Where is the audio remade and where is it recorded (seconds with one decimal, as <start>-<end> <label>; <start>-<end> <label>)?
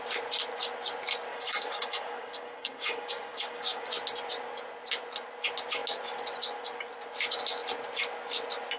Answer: 0.0-1.3 recorded; 1.3-3.9 remade; 3.9-8.8 recorded